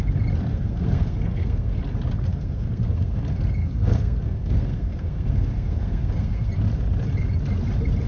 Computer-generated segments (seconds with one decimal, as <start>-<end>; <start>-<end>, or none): 0.5-1.8; 2.3-3.2; 3.6-6.5